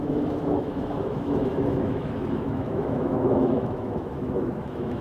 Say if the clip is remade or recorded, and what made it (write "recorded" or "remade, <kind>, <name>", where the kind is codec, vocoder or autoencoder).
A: remade, autoencoder, DAC-VAE